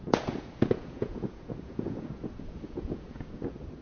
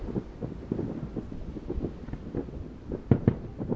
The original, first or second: second